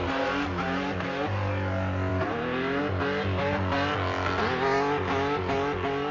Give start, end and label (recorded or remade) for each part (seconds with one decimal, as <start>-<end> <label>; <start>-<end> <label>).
0.0-6.1 recorded